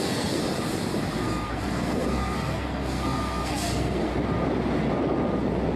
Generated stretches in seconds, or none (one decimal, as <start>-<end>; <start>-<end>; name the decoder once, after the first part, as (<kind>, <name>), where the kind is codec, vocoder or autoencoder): 0.0-0.4 (codec, SNAC); 1.1-4.1